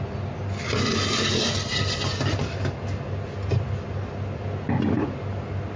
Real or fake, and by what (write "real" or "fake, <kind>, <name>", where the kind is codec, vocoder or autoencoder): real